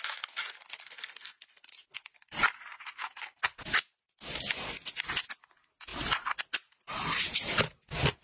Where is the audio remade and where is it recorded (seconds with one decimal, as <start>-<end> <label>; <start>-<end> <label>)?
0.0-8.2 recorded